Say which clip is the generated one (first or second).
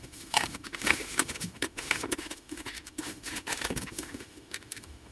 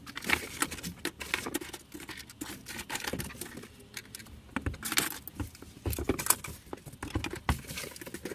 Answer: first